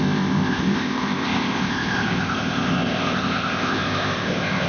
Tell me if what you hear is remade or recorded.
remade